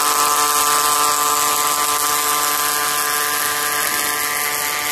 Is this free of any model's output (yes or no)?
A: yes